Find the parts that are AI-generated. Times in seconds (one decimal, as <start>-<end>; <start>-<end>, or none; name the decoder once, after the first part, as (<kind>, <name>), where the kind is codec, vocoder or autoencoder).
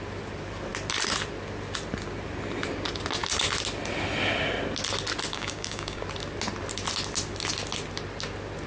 5.3-6.0 (codec, DAC)